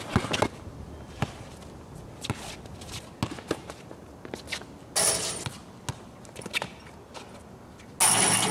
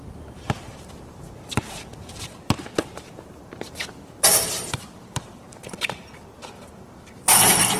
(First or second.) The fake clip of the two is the second